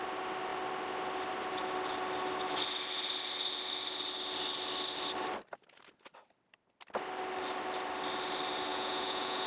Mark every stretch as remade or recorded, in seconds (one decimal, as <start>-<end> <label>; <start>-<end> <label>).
0.0-8.7 recorded; 8.7-9.5 remade